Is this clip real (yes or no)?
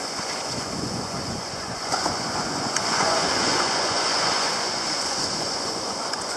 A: no